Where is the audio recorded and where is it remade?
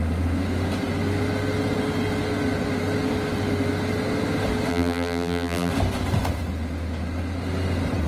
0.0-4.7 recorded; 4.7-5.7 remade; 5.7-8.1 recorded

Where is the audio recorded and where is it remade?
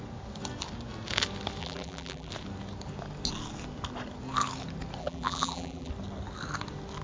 0.0-1.6 recorded; 1.6-2.3 remade; 2.3-5.0 recorded; 5.0-5.9 remade; 5.9-7.0 recorded